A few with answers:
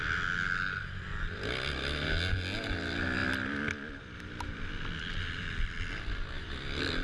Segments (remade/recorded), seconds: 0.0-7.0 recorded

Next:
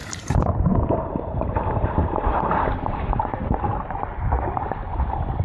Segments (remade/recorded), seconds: 0.0-3.2 remade; 3.2-5.4 recorded